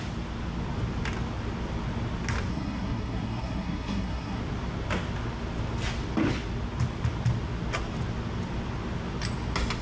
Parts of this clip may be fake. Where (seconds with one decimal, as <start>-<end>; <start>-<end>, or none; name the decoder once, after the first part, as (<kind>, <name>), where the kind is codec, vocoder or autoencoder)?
2.5-4.4 (codec, SNAC)